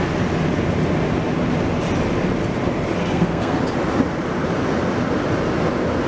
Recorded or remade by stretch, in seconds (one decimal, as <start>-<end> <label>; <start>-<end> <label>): 0.0-3.0 recorded; 3.0-3.6 remade; 3.6-6.1 recorded